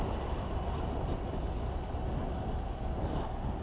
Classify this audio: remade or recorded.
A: recorded